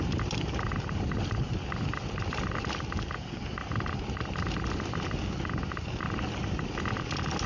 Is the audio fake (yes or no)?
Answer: no